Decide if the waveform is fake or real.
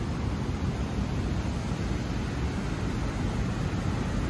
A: real